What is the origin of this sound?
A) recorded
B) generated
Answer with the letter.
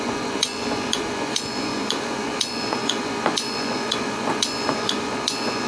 B